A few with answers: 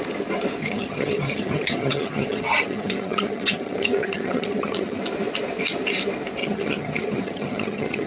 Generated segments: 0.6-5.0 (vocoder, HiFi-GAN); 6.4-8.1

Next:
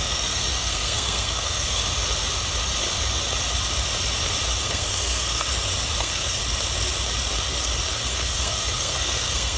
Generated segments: 0.0-1.8 (codec, SNAC); 4.6-5.5; 6.0-6.4; 7.9-9.6

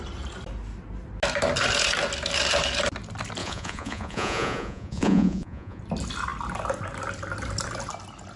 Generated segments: 3.4-5.8 (vocoder, Vocos)

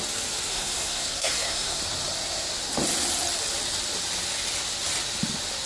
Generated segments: 0.5-1.8 (codec, SNAC)

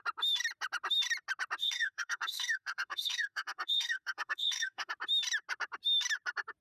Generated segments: 1.6-4.9 (codec, SNAC)

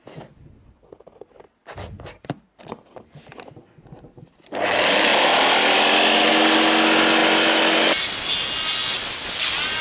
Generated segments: none

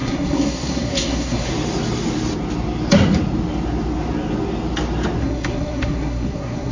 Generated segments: 0.0-1.5 (codec, SNAC); 5.2-6.7